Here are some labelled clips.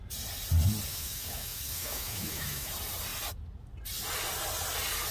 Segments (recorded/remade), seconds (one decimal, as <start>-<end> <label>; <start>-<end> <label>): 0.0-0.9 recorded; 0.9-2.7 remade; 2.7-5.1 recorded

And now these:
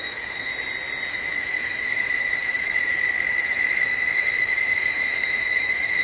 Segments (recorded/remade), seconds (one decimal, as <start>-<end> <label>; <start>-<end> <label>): 0.0-0.5 remade; 0.5-1.1 recorded; 1.1-6.0 remade

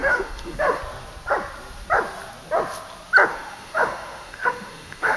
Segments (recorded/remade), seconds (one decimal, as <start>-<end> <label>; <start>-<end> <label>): 0.0-0.8 remade; 0.8-3.3 recorded; 3.3-5.2 remade

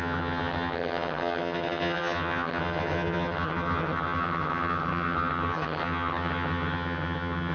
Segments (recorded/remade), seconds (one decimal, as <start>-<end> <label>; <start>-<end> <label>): 0.0-7.5 remade

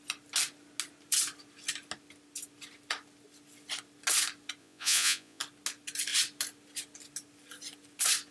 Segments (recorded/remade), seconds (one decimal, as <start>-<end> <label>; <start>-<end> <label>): 0.0-4.6 recorded; 4.6-5.4 remade; 5.4-8.3 recorded